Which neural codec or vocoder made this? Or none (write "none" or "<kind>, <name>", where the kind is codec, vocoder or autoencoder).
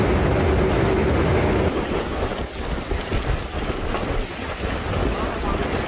none